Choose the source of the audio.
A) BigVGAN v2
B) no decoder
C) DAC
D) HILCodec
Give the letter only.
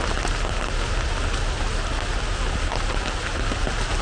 B